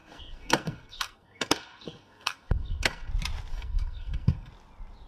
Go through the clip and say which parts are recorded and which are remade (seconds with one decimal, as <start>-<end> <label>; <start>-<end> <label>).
0.0-3.1 remade; 3.1-3.5 recorded; 3.5-4.5 remade; 4.5-5.1 recorded